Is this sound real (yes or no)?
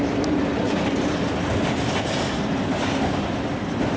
yes